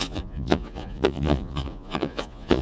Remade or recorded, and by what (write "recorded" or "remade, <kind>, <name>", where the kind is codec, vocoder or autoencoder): remade, vocoder, Vocos